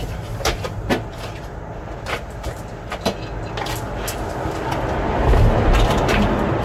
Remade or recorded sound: recorded